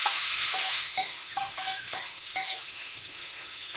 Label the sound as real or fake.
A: fake